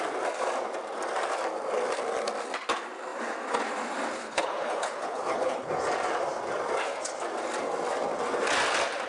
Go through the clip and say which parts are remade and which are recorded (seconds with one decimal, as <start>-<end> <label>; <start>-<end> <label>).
0.0-4.2 recorded; 4.2-5.7 remade; 5.7-9.1 recorded